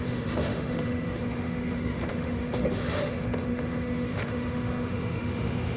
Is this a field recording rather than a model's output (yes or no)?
no